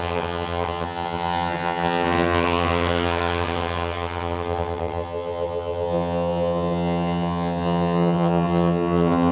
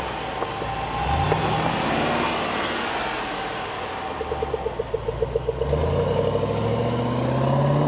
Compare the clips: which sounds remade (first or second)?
first